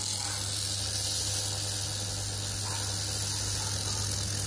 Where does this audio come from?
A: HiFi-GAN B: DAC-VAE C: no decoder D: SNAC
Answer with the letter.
C